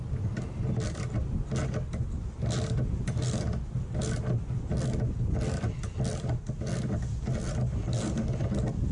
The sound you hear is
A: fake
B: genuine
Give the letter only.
B